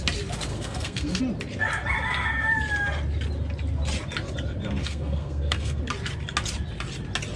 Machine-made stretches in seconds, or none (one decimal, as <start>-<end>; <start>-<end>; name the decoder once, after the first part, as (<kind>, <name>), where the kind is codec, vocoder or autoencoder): 0.5-1.2 (codec, SNAC); 4.8-5.8